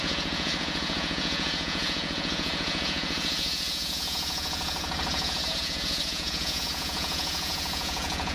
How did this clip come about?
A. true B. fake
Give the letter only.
B